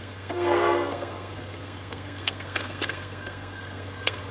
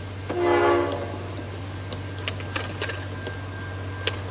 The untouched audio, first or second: second